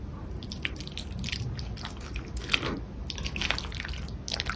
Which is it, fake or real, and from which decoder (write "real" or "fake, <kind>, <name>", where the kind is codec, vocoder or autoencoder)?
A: real